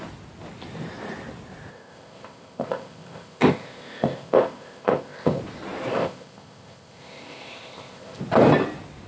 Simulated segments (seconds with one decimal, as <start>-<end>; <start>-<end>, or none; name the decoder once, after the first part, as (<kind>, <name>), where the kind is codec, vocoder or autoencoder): 1.7-5.4 (codec, ZipCodec); 5.9-8.2